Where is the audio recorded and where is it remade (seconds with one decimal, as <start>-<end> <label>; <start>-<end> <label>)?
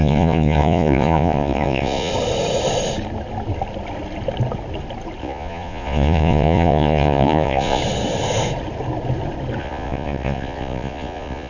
0.0-2.1 remade; 2.1-5.2 recorded; 5.2-7.8 remade; 7.8-9.6 recorded; 9.6-11.5 remade